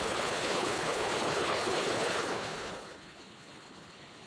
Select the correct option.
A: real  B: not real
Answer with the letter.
B